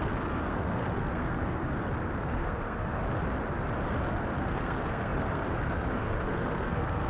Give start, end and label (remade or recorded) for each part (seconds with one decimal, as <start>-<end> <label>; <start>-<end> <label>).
0.0-1.6 remade; 1.6-2.2 recorded; 2.2-3.0 remade; 3.0-4.4 recorded; 4.4-7.1 remade